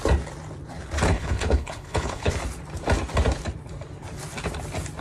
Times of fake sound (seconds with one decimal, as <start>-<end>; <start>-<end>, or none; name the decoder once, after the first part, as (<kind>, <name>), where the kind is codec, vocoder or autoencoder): 1.1-2.3 (codec, HILCodec)